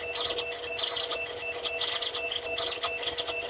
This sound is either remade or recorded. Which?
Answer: recorded